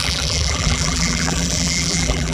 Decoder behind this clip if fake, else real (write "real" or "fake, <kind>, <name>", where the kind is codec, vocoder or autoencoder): fake, vocoder, BigVGAN v2